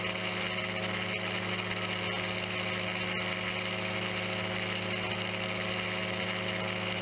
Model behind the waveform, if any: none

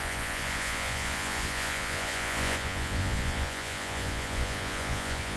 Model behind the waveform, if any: vocoder, Vocos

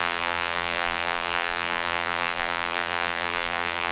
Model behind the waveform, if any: vocoder, BigVGAN v2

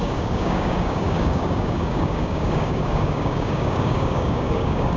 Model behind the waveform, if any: codec, DAC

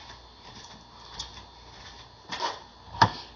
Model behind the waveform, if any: none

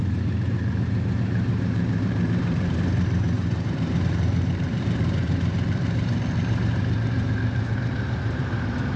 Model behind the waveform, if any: vocoder, BigVGAN v2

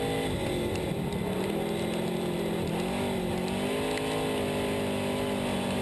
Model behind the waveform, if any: none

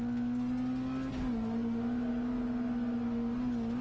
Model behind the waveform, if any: none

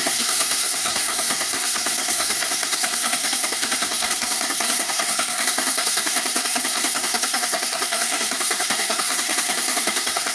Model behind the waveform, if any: codec, SNAC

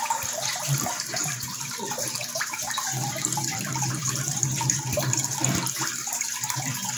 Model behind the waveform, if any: vocoder, BigVGAN v2